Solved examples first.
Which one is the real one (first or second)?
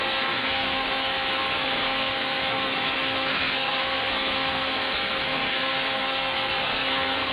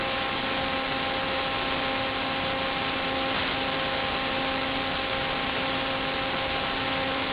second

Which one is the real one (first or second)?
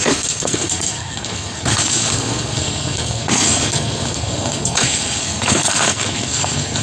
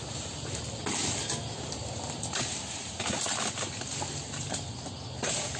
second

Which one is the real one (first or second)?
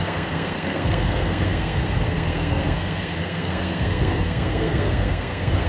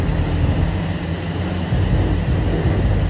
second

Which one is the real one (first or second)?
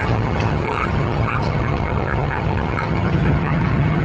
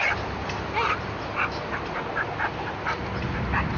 second